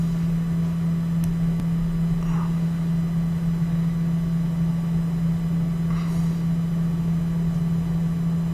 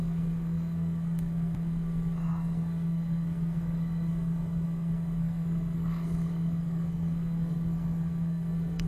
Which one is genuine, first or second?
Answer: first